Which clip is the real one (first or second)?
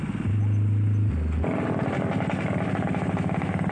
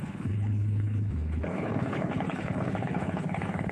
first